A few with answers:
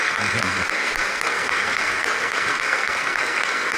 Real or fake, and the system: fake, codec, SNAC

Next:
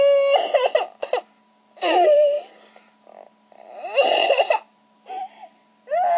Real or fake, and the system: real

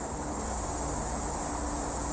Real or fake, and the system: real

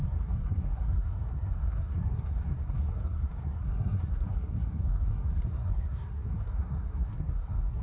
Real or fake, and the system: fake, codec, SNAC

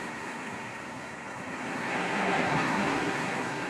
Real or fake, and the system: fake, codec, SNAC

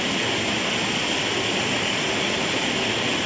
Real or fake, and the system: real